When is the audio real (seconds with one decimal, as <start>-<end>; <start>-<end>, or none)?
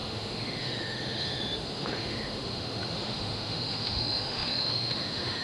none